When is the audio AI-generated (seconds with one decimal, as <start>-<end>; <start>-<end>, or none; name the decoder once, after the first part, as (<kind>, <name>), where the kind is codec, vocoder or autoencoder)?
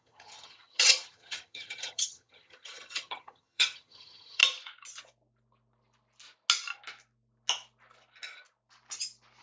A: 0.0-4.4 (vocoder, HiFi-GAN)